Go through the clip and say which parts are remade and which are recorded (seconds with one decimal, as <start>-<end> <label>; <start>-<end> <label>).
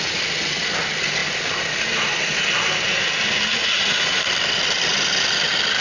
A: 0.0-3.6 recorded; 3.6-4.2 remade; 4.2-5.8 recorded